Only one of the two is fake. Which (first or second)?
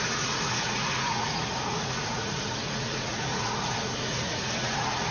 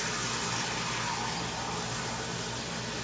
first